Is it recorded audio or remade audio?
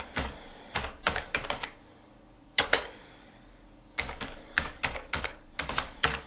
remade